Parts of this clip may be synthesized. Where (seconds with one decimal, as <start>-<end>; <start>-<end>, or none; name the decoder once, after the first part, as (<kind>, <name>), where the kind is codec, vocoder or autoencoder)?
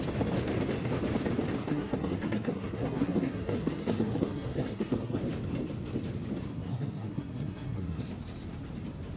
1.6-5.2 (codec, SNAC); 6.5-8.1